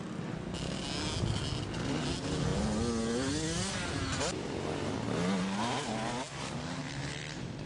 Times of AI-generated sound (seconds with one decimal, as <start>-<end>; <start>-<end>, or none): none

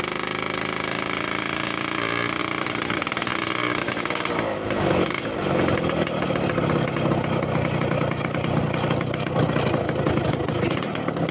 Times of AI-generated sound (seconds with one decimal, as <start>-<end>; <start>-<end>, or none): none

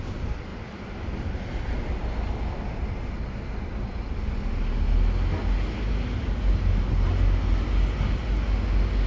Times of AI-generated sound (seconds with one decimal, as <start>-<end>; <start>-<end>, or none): none

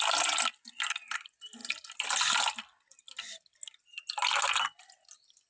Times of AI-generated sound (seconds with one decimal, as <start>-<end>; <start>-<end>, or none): none

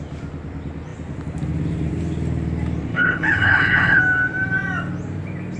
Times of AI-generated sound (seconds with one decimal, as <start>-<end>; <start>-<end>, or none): 2.9-4.0